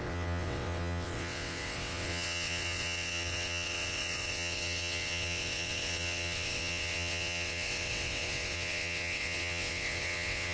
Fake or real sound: fake